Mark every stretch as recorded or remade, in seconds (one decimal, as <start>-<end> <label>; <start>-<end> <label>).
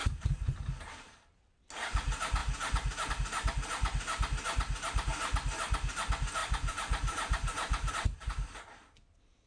0.0-1.4 remade; 1.4-6.4 recorded; 6.4-7.9 remade; 7.9-9.5 recorded